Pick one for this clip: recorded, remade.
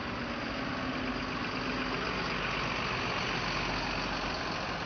recorded